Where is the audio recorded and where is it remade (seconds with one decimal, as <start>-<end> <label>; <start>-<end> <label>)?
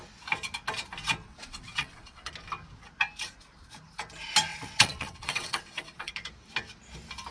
0.0-1.3 recorded; 1.3-2.3 remade; 2.3-4.5 recorded; 4.5-6.1 remade; 6.1-7.3 recorded